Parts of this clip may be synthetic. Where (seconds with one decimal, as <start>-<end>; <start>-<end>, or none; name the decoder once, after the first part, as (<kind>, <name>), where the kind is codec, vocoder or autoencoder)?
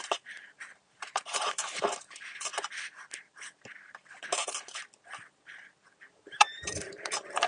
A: 0.0-2.5 (vocoder, BigVGAN v2); 4.2-4.8; 6.1-7.5